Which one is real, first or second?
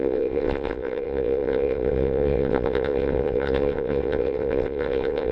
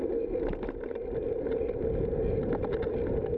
second